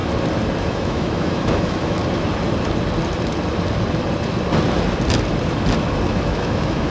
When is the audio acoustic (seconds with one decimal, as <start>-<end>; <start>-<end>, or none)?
0.0-0.6; 2.0-6.1